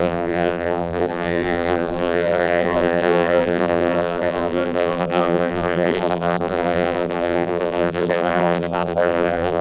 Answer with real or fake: fake